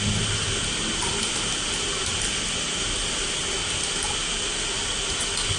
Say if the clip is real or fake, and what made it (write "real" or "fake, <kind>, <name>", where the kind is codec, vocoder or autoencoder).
real